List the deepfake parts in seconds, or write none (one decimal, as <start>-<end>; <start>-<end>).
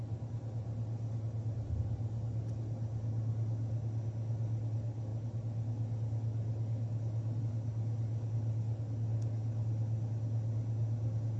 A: none